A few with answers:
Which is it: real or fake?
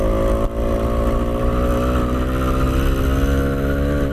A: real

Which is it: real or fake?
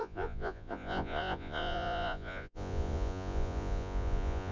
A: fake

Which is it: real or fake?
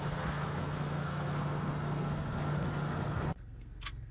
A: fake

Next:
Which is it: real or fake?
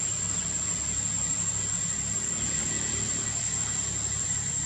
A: real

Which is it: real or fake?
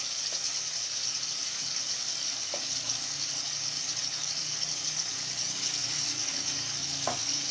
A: fake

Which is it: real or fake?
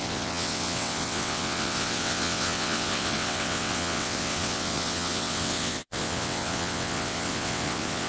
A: fake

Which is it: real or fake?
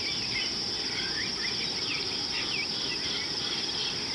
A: real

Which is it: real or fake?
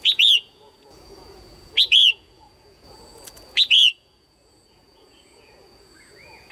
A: fake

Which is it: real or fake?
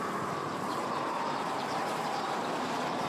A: fake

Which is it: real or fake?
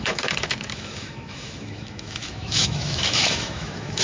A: fake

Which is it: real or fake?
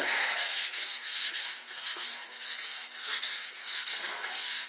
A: fake